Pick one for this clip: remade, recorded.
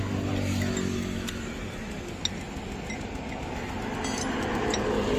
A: recorded